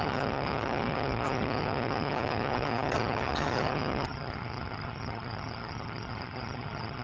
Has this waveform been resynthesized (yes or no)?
yes